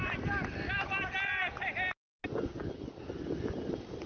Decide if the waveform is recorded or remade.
recorded